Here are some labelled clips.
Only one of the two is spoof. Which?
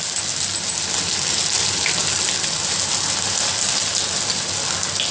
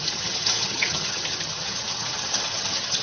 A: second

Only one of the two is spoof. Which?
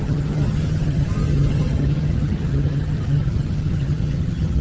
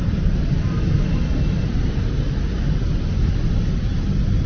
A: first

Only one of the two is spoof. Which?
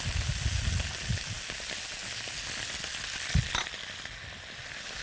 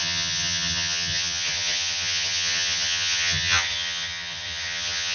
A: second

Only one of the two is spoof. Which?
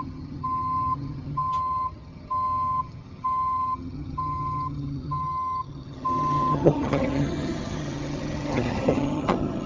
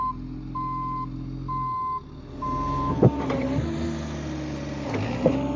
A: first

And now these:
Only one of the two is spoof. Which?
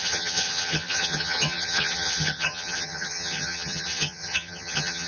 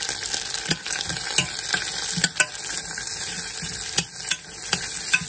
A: first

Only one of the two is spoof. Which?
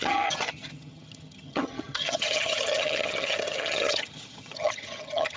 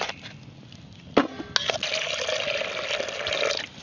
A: first